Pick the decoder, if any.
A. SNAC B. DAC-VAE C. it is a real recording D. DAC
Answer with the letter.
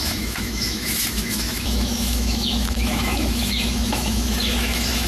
B